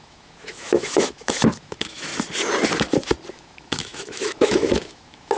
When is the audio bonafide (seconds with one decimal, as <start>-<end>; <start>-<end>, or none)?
2.1-3.3